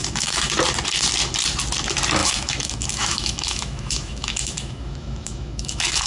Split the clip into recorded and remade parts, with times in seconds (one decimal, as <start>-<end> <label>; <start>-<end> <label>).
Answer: 0.0-0.5 remade; 0.5-2.2 recorded; 2.2-6.1 remade